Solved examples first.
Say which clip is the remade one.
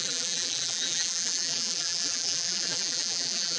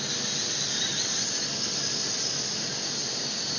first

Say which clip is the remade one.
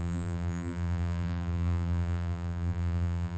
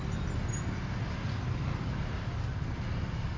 first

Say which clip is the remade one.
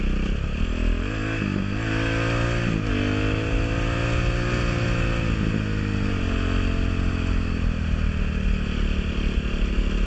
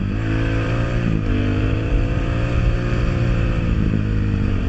second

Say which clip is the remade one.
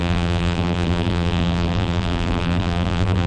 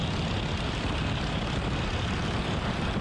first